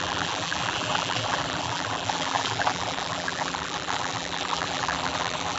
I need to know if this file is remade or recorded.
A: remade